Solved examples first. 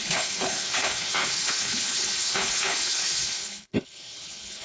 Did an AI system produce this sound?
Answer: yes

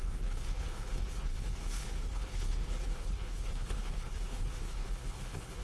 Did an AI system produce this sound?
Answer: yes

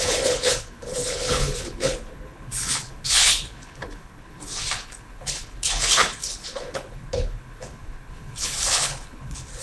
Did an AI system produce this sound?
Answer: yes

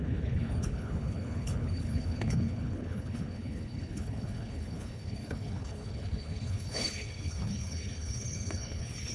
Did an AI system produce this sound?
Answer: yes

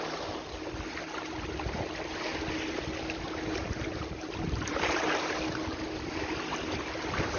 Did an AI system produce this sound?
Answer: no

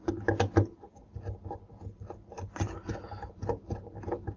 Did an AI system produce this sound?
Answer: no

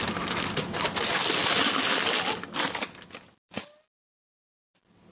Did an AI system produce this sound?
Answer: no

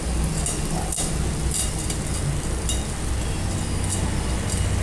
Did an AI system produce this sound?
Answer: no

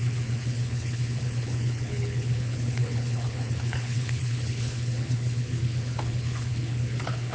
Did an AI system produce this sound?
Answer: yes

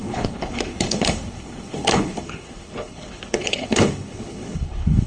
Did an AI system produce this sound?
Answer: yes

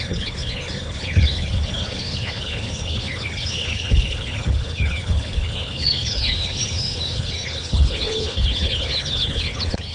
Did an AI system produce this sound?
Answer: yes